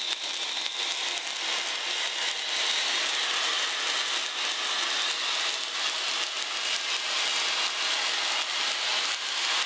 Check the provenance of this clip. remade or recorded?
recorded